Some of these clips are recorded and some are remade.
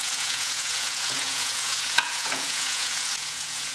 remade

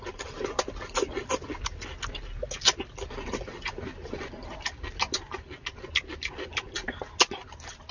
recorded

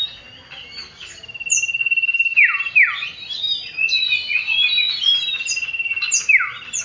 recorded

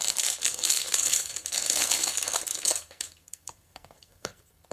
remade